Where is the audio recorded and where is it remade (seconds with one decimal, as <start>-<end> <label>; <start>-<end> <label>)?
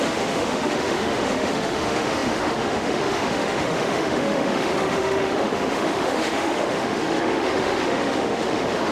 0.0-8.9 remade